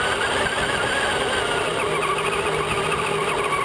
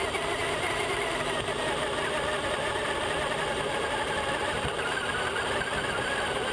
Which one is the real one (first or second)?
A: first